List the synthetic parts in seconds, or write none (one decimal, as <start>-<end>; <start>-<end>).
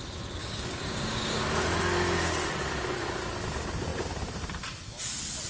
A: 0.4-1.4